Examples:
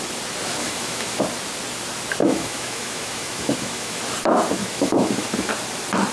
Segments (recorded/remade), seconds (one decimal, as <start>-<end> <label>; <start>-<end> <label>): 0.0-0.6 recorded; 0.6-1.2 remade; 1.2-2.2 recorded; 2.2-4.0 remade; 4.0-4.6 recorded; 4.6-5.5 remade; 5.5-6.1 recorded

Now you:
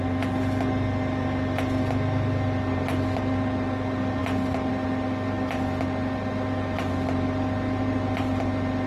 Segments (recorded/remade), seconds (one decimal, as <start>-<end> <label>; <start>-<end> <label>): 0.0-8.9 recorded

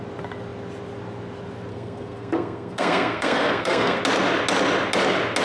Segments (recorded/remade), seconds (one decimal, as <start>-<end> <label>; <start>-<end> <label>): 0.0-1.7 recorded; 1.7-4.0 remade; 4.0-5.4 recorded